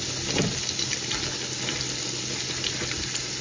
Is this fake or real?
real